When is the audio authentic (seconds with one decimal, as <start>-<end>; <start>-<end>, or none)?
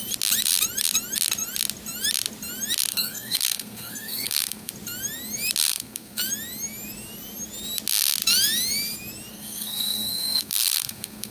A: 0.0-2.9; 4.7-5.7; 6.2-9.3